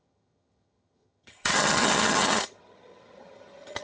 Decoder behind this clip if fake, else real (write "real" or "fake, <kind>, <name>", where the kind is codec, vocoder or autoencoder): fake, vocoder, HiFi-GAN